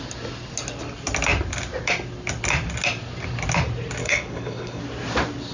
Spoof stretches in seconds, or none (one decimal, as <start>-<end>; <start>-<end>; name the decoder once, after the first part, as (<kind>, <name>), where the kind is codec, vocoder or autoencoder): 4.0-4.8 (codec, HILCodec)